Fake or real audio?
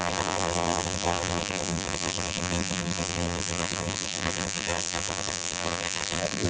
fake